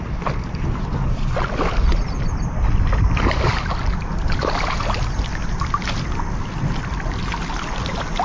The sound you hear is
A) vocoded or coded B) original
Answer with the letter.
B